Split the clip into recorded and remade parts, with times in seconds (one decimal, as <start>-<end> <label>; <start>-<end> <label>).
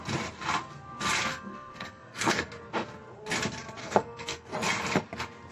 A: 0.0-1.3 recorded; 1.3-2.6 remade; 2.6-3.8 recorded; 3.8-4.5 remade; 4.5-5.5 recorded